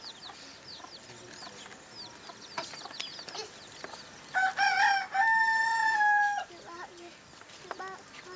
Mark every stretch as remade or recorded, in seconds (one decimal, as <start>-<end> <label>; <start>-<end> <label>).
0.0-5.8 recorded; 5.8-6.5 remade; 6.5-8.4 recorded